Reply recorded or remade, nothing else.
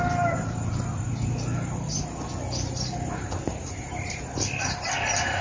recorded